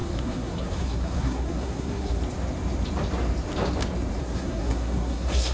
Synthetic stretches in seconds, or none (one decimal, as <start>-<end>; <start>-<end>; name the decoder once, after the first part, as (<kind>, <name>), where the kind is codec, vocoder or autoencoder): 0.0-2.2 (codec, SNAC); 4.2-5.5